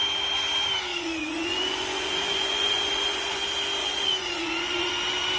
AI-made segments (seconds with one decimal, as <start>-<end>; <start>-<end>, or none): 0.9-3.4; 3.8-4.9